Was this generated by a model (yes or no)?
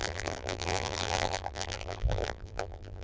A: yes